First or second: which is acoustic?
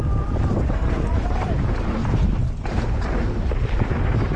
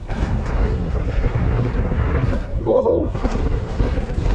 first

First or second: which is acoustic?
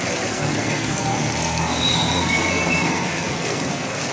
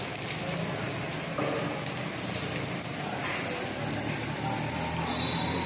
second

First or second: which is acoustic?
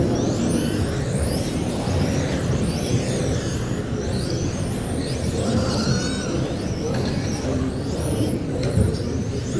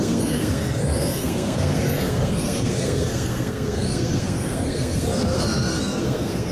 first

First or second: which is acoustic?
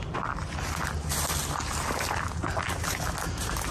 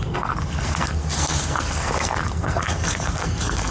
first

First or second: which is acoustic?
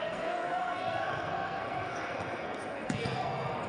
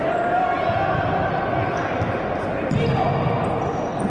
second